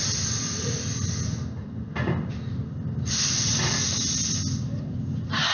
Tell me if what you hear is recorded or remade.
remade